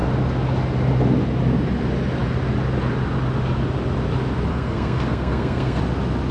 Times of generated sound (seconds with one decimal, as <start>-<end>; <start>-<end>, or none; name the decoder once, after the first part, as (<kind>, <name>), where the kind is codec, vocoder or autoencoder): 4.5-5.8 (codec, SNAC)